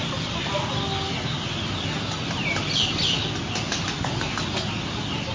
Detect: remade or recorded recorded